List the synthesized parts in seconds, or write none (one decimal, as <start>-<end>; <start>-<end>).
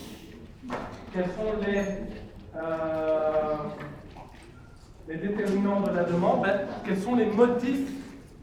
0.0-2.6; 3.2-6.5